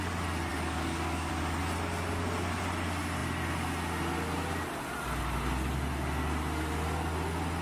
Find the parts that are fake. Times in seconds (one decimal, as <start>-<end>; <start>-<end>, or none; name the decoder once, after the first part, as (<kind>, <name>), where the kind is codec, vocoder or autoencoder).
0.5-1.3 (codec, DAC)